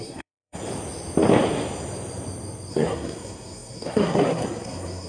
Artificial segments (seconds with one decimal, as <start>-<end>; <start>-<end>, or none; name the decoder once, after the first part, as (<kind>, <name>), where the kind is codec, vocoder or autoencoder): 0.0-0.6 (codec, SNAC); 2.7-5.1